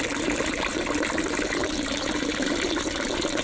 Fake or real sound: fake